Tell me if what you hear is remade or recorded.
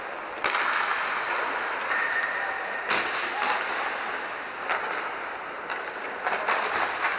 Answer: recorded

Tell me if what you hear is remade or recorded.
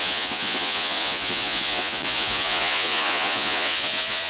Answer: remade